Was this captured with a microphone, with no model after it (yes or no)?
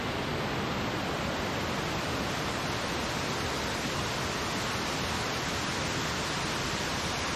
yes